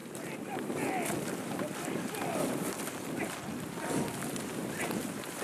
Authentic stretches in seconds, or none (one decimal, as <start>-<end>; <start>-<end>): 3.2-5.4